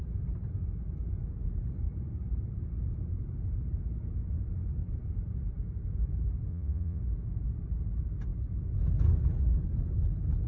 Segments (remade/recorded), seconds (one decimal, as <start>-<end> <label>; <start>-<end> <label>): 0.0-6.5 recorded; 6.5-7.0 remade; 7.0-10.5 recorded

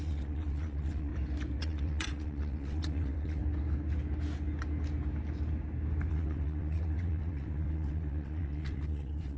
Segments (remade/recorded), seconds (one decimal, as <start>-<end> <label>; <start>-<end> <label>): 0.0-1.1 remade; 1.1-1.6 recorded; 1.6-3.4 remade; 3.4-6.1 recorded; 6.1-9.4 remade

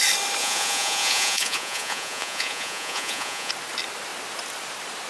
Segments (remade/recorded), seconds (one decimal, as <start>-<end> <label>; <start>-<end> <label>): 0.0-0.4 recorded; 0.4-3.5 remade; 3.5-5.1 recorded